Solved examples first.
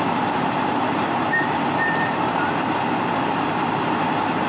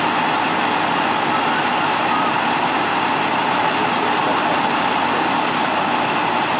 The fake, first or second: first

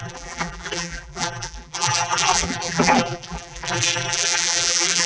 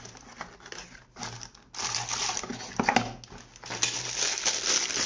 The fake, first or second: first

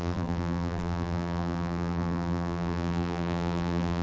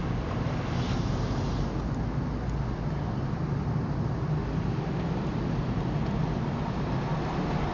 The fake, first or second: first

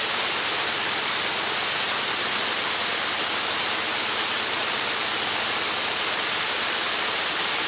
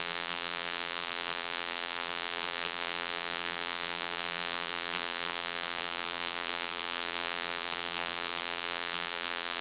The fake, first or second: second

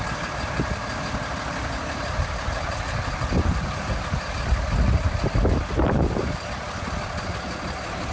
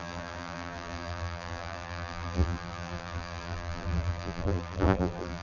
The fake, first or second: second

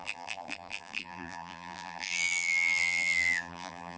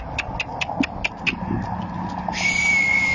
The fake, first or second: first